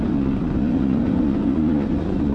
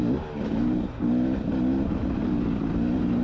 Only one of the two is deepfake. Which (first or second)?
first